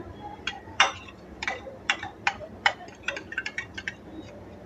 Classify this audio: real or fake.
fake